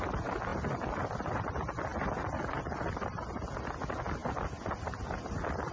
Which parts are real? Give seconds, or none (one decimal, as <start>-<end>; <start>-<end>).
0.0-0.5; 1.1-1.9; 3.6-5.7